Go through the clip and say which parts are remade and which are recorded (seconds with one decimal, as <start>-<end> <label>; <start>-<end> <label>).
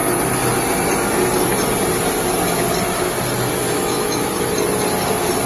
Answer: 0.0-3.6 recorded; 3.6-4.3 remade; 4.3-5.5 recorded